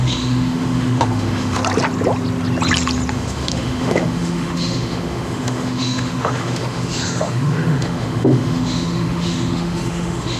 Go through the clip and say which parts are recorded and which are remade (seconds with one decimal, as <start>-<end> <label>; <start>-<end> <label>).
0.0-1.6 remade; 1.6-3.1 recorded; 3.1-10.4 remade